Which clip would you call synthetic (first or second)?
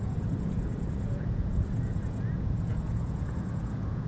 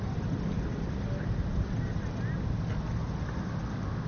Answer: first